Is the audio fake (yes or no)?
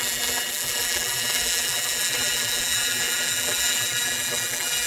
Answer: yes